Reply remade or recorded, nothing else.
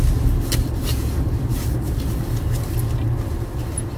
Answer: recorded